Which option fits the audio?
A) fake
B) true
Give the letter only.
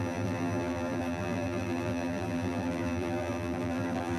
A